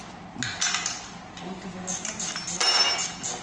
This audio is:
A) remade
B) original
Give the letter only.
B